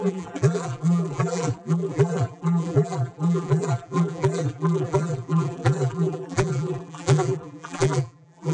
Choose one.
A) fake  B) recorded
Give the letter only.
A